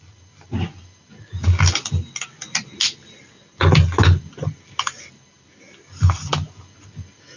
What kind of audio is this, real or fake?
real